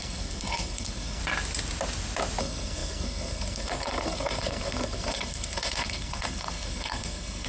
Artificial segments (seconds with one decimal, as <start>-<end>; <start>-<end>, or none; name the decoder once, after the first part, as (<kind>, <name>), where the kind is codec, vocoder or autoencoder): 0.0-1.2 (codec, SNAC); 2.4-7.5